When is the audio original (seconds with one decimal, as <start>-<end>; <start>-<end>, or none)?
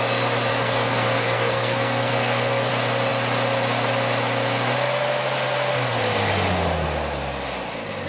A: 0.0-0.5; 2.7-8.1